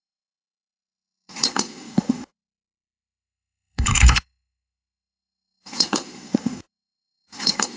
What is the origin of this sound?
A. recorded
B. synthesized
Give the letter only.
B